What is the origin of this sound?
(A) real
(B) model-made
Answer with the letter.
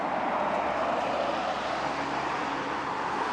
A